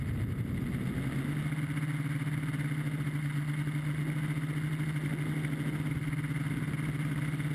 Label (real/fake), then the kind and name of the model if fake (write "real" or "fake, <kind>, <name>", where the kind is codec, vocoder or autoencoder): real